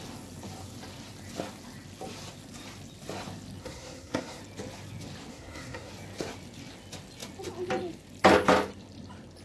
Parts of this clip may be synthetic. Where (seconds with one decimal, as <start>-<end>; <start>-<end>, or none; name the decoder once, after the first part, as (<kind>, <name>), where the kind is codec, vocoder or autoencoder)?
3.6-4.4 (codec, SNAC); 5.3-5.9